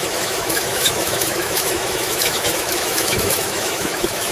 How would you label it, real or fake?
fake